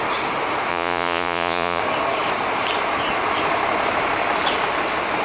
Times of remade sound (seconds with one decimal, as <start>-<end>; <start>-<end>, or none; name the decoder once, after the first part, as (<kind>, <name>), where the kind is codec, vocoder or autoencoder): 0.7-1.8 (vocoder, Vocos)